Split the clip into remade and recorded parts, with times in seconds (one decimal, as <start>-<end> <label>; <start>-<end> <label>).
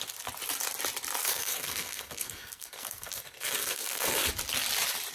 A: 0.0-1.2 recorded; 1.2-4.3 remade; 4.3-5.1 recorded